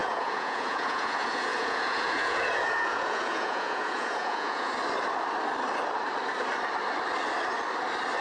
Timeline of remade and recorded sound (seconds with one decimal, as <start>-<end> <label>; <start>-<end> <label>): 0.0-4.7 remade; 4.7-8.2 recorded